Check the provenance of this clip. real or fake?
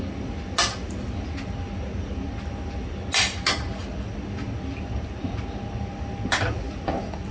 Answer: real